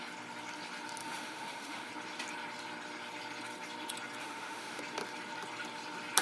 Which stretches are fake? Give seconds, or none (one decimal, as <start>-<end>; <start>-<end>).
1.0-1.9; 4.2-4.8